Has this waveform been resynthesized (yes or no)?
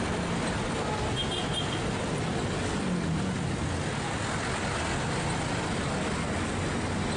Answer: no